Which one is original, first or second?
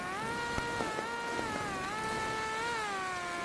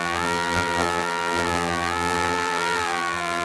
first